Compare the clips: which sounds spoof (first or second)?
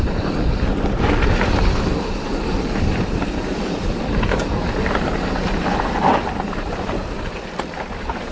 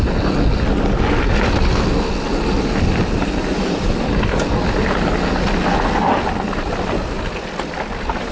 first